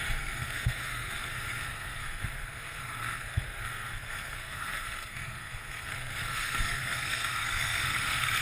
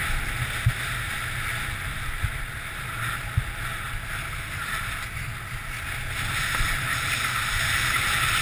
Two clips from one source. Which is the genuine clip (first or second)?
second